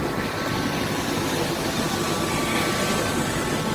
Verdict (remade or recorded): recorded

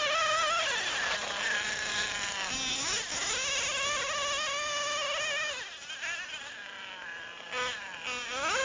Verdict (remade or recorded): recorded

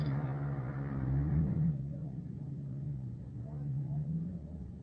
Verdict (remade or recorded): remade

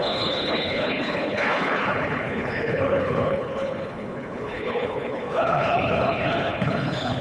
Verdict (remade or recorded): remade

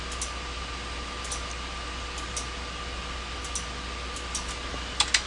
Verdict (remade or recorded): recorded